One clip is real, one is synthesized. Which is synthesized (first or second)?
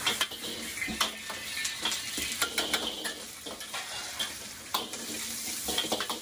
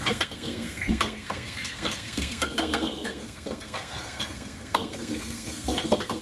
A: second